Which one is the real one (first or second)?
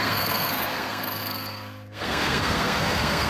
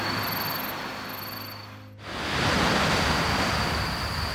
second